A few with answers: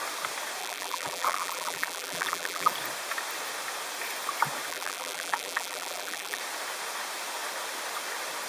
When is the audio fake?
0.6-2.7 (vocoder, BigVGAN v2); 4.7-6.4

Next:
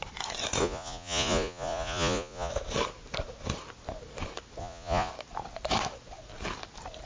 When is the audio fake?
0.6-2.5 (vocoder, Vocos); 4.6-5.1

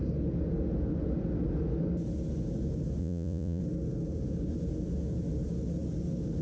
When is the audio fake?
3.0-3.6 (vocoder, Vocos)

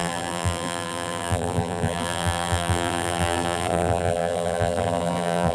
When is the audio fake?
0.0-5.5 (vocoder, BigVGAN v2)

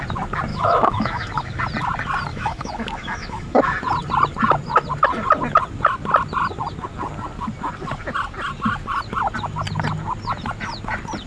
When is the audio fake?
0.5-1.6 (autoencoder, DAC-VAE); 2.3-3.7